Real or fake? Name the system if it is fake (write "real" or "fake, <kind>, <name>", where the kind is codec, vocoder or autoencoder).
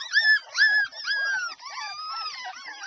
real